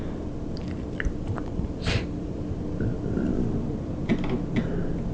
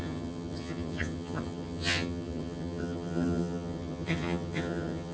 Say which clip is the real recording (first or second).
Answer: first